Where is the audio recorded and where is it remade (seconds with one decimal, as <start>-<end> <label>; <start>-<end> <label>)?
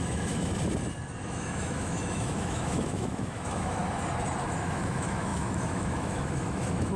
0.0-0.5 remade; 0.5-1.2 recorded; 1.2-3.8 remade; 3.8-4.5 recorded; 4.5-7.0 remade